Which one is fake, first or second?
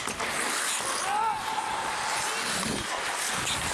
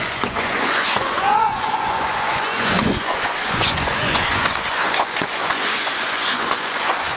second